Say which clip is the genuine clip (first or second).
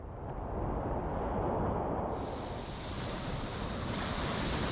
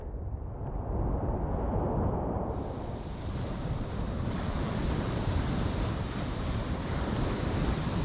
first